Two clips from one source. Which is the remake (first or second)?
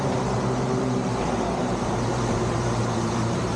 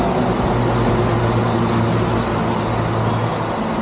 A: first